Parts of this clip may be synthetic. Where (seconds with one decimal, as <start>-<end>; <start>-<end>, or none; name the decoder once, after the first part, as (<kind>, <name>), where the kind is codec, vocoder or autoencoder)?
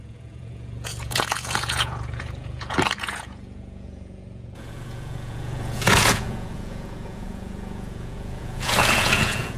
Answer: 0.0-9.6 (vocoder, Vocos)